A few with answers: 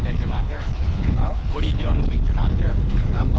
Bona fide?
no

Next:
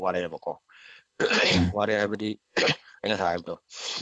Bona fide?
no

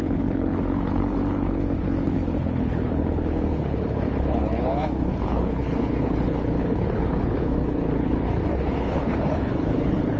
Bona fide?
no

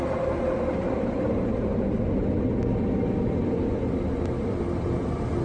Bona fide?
yes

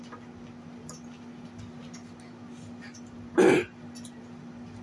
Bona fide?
yes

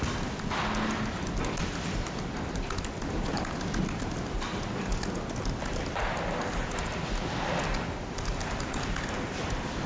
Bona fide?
yes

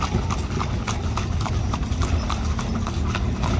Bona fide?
yes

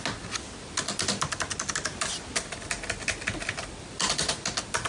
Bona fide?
yes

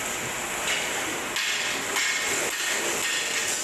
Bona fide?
yes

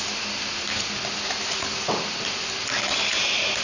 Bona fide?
yes